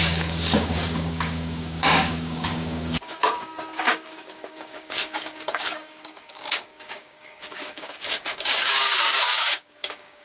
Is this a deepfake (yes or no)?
yes